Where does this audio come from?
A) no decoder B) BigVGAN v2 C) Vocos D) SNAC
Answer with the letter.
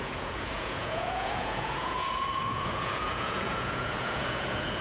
C